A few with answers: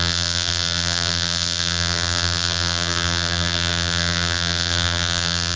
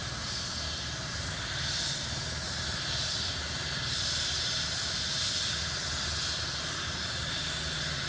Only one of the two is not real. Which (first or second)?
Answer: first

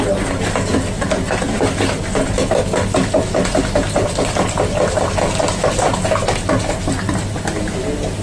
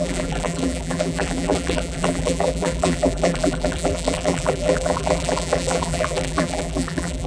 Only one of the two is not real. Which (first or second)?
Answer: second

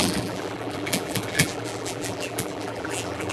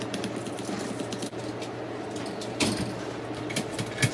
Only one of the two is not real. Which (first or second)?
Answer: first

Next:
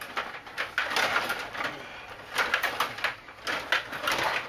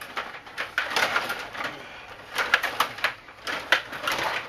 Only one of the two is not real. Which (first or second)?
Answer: second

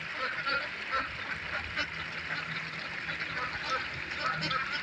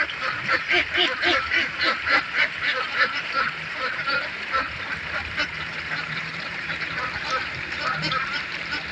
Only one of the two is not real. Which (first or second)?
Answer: second